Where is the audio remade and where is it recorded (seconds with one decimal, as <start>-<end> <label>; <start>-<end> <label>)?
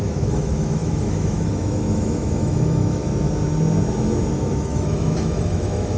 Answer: 0.0-3.0 remade; 3.0-4.3 recorded; 4.3-6.0 remade